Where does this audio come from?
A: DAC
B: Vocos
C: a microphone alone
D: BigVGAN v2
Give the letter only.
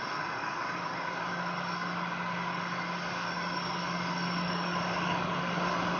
A